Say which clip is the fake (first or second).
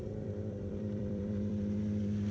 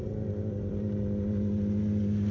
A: first